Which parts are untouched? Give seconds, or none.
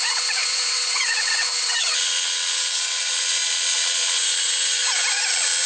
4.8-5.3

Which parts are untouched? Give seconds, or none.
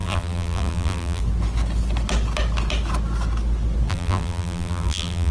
1.2-3.9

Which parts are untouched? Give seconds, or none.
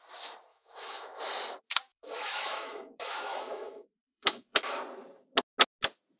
0.0-0.5; 1.2-1.9; 4.8-6.2